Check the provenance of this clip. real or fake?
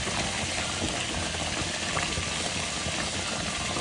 real